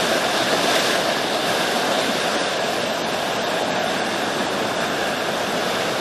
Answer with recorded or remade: recorded